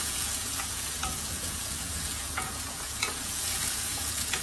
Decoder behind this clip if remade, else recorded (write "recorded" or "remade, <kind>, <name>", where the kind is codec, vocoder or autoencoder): remade, vocoder, Vocos